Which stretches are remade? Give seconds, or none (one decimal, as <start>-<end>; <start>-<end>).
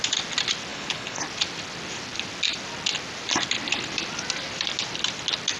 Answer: 0.7-1.2